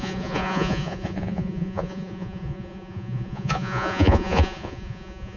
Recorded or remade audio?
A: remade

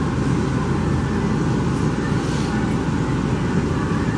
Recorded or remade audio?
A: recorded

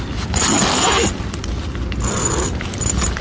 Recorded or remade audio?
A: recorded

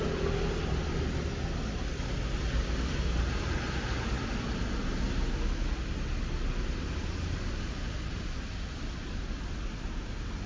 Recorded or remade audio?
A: recorded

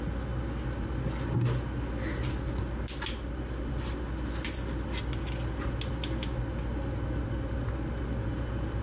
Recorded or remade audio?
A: recorded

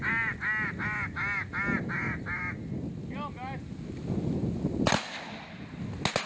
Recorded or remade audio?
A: recorded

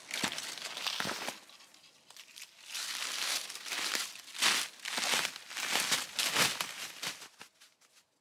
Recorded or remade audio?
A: recorded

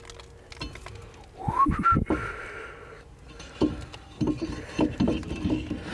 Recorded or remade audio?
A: recorded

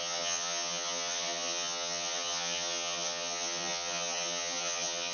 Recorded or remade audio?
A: remade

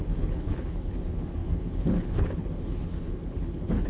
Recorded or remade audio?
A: remade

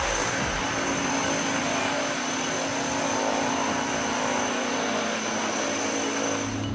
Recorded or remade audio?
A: recorded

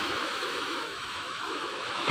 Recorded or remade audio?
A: remade